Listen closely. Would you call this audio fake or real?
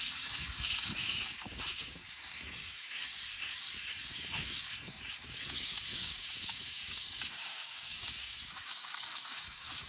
fake